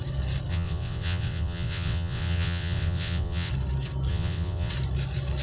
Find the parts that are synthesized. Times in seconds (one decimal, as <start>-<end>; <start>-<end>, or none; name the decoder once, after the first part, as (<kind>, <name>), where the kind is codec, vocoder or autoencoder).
0.5-3.5 (vocoder, WaveNeXt); 4.1-4.7